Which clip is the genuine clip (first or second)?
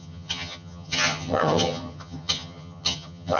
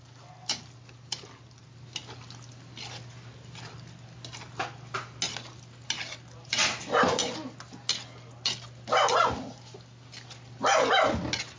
second